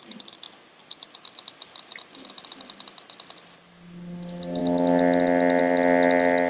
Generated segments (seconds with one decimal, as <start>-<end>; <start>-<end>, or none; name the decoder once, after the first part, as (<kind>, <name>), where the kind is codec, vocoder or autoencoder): none